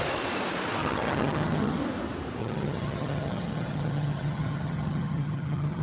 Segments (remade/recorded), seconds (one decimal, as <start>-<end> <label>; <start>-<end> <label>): 0.0-0.8 recorded; 0.8-1.8 remade; 1.8-2.4 recorded; 2.4-5.8 remade